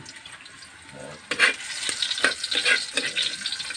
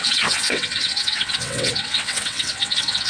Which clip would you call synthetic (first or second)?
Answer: second